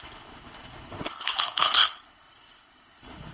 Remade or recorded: remade